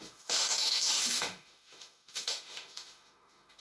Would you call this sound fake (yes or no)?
yes